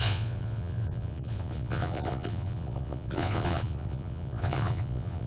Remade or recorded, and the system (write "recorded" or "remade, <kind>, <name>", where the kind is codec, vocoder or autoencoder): remade, vocoder, Vocos